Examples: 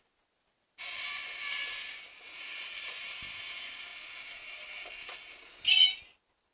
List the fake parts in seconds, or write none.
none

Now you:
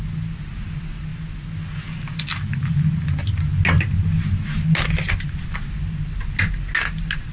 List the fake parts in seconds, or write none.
none

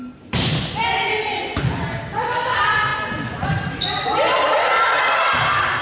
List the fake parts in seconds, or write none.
none

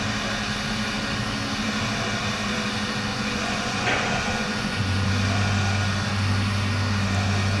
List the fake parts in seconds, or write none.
3.1-5.1 (vocoder, Vocos)